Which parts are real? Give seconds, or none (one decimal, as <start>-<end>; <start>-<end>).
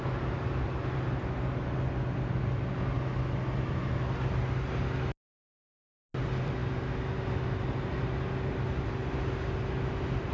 0.0-10.3